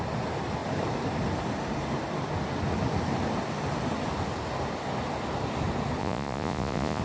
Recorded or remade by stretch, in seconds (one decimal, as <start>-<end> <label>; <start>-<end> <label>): 0.0-6.0 recorded; 6.0-7.0 remade

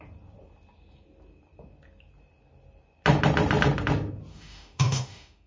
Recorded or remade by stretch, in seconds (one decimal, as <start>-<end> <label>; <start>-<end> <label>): 0.0-4.3 recorded; 4.3-5.5 remade

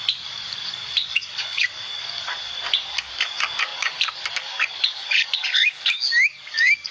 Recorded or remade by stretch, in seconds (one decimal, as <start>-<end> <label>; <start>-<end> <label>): 0.0-6.9 remade

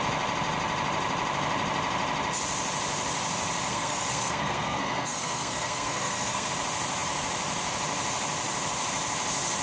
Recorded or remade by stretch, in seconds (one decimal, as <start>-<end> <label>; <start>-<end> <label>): 0.0-3.7 recorded; 3.7-6.5 remade; 6.5-9.6 recorded

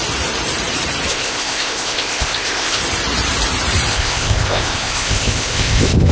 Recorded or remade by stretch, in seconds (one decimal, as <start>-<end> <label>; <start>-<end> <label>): 0.0-1.1 recorded; 1.1-2.8 remade; 2.8-3.9 recorded; 3.9-6.1 remade

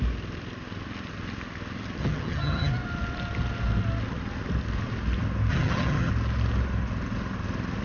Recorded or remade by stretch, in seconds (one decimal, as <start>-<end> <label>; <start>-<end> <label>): 0.0-2.0 recorded; 2.0-2.7 remade; 2.7-5.5 recorded; 5.5-6.1 remade; 6.1-7.8 recorded

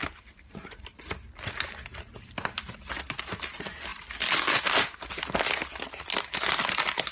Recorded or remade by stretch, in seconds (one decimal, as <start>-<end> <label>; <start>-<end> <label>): 0.0-7.1 recorded

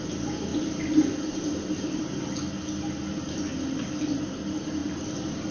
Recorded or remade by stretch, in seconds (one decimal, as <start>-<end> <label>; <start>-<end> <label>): 0.0-0.5 recorded; 0.5-2.0 remade; 2.0-3.5 recorded; 3.5-4.2 remade; 4.2-4.8 recorded; 4.8-5.5 remade